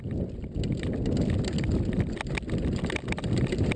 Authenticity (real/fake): real